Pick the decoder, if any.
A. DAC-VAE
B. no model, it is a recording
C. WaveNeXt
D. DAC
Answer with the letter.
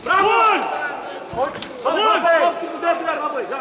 B